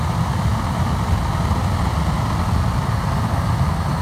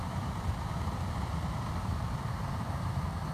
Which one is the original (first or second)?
first